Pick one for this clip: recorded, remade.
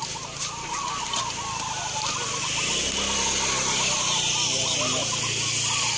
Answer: recorded